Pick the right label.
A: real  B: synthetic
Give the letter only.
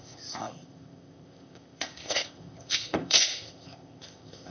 B